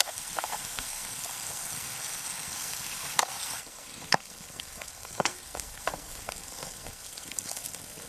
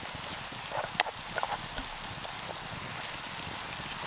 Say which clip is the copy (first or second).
first